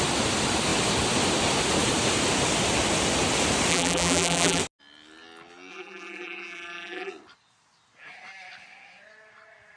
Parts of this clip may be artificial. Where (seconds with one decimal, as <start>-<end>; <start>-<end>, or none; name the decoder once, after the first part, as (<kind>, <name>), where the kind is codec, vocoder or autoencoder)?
3.7-4.6 (vocoder, BigVGAN v2); 5.7-7.1